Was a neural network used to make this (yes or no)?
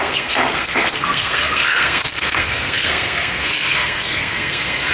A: yes